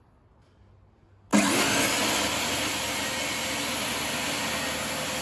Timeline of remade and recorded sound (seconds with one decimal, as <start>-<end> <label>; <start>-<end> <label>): 0.0-5.2 recorded

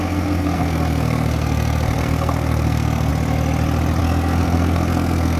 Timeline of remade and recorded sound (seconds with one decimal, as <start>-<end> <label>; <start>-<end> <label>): 0.0-3.1 remade; 3.1-4.0 recorded; 4.0-5.4 remade

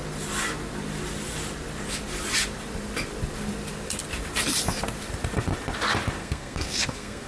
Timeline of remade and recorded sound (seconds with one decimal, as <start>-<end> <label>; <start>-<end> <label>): 0.0-6.2 recorded; 6.2-7.3 remade

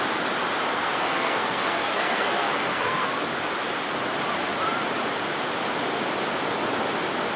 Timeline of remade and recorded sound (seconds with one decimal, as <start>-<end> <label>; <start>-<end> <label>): 0.0-0.7 recorded; 0.7-3.1 remade; 3.1-7.4 recorded

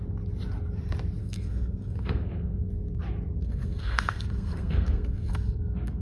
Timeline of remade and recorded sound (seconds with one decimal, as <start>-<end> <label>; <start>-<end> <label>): 0.0-1.2 recorded; 1.2-2.7 remade; 2.7-3.4 recorded; 3.4-6.0 remade

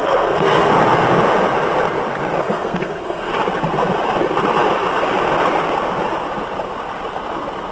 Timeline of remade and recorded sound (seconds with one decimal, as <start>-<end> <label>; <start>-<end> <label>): 0.0-0.7 remade; 0.7-2.4 recorded; 2.4-3.3 remade; 3.3-7.7 recorded

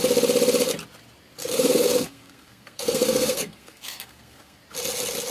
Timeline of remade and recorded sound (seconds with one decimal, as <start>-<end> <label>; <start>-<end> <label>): 0.0-1.4 recorded; 1.4-4.6 remade; 4.6-5.3 recorded